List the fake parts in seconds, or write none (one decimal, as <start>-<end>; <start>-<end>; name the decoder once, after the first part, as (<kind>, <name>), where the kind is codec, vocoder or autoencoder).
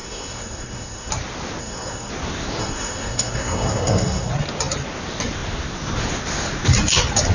0.0-1.1 (codec, SNAC); 1.6-2.1; 2.6-4.3